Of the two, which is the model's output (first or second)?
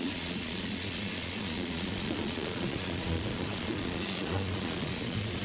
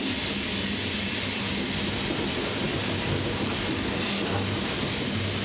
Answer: first